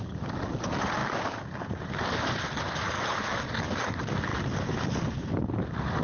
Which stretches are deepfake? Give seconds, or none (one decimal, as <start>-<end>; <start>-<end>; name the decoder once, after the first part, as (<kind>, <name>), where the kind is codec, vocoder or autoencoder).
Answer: none

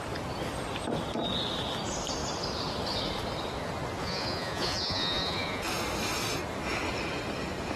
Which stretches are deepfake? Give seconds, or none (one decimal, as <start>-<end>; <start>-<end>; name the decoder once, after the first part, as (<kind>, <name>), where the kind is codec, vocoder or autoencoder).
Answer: 4.0-5.6 (vocoder, Vocos)